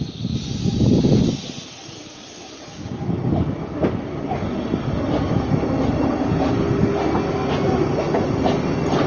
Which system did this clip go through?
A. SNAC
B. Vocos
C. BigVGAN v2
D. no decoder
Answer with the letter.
D